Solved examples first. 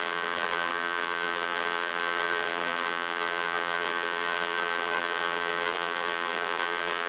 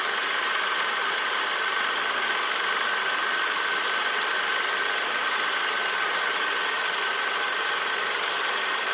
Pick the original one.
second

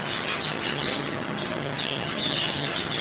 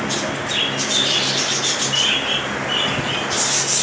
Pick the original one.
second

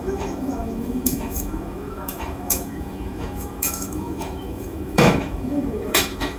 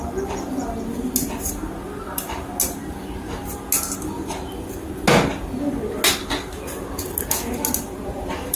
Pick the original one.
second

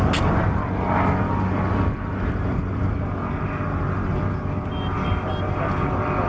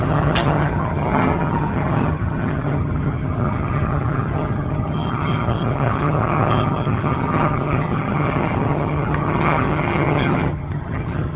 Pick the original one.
first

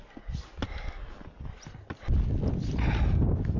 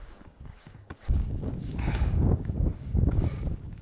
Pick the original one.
first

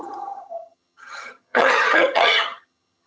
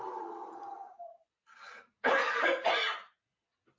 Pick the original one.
second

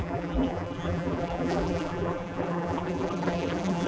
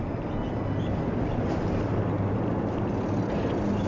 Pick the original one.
second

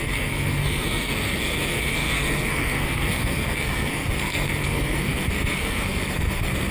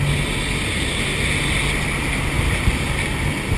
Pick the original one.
second